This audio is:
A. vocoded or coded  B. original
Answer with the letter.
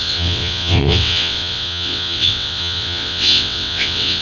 A